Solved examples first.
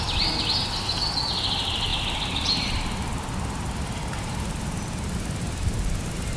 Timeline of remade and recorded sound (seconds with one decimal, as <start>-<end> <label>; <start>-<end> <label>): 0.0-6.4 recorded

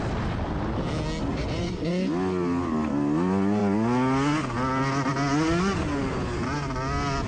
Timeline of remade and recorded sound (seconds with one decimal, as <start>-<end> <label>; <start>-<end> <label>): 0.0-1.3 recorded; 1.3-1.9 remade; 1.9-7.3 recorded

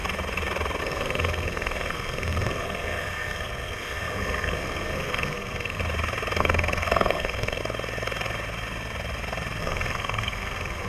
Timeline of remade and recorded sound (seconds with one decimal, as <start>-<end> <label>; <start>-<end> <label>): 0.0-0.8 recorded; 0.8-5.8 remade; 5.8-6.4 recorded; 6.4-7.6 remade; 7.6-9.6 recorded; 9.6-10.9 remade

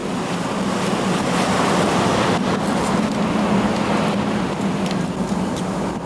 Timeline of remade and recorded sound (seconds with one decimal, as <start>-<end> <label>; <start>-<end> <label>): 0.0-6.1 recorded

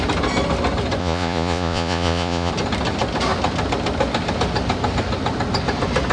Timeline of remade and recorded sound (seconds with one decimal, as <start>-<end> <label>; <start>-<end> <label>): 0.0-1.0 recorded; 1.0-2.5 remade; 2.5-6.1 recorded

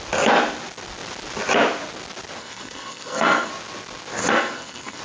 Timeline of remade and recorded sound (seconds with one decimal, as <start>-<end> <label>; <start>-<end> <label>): 0.0-2.4 recorded; 2.4-3.5 remade; 3.5-4.2 recorded; 4.2-5.0 remade

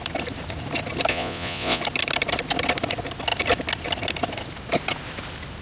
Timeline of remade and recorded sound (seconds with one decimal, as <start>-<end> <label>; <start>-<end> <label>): 0.0-1.1 recorded; 1.1-1.8 remade; 1.8-5.6 recorded

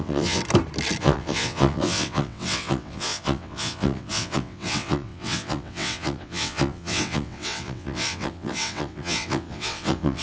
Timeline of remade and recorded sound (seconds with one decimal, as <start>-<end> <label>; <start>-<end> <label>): 0.0-0.4 remade; 0.4-1.0 recorded; 1.0-10.2 remade